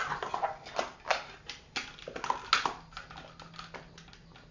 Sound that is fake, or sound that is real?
real